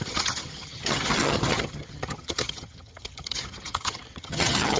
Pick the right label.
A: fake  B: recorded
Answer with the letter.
A